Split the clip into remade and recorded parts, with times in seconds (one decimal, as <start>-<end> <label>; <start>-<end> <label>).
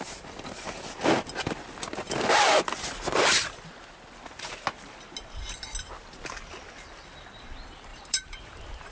0.0-7.9 recorded; 7.9-8.9 remade